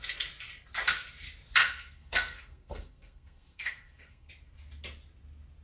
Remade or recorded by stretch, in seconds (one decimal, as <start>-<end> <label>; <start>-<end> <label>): 0.0-1.6 recorded; 1.6-4.3 remade; 4.3-5.6 recorded